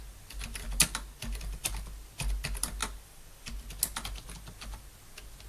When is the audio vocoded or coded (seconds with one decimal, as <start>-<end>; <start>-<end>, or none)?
none